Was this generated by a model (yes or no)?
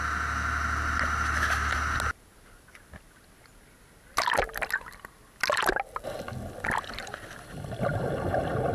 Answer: no